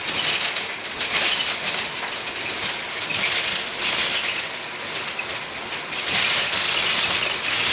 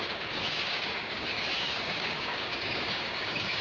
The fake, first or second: second